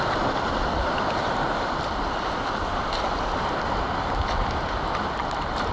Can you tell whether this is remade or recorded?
recorded